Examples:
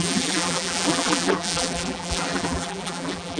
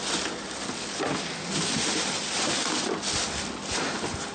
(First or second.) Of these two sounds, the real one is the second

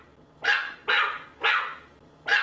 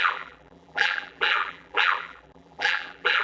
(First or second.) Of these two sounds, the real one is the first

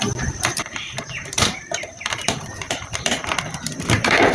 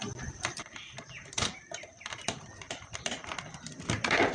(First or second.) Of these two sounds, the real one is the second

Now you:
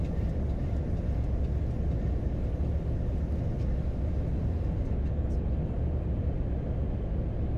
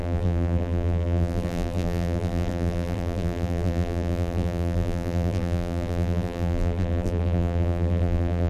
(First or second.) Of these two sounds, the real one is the first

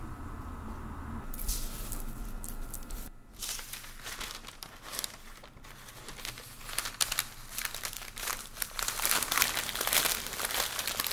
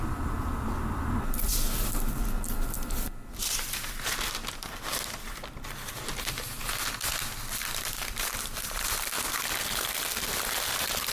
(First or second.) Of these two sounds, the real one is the first